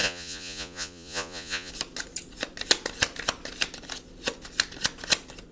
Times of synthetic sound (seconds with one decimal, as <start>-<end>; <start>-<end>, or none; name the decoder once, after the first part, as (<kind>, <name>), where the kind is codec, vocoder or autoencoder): 0.0-1.7 (vocoder, Vocos)